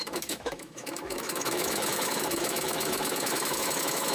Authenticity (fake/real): fake